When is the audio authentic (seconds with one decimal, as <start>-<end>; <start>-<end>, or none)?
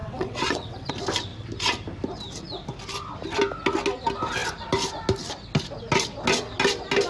0.9-7.1